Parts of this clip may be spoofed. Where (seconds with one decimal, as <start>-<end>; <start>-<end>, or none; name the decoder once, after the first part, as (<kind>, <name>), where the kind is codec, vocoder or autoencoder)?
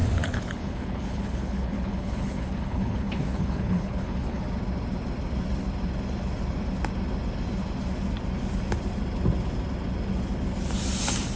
0.0-4.4 (codec, HILCodec)